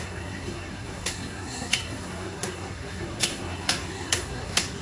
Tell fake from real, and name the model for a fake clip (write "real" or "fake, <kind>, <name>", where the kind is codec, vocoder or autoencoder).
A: fake, codec, SNAC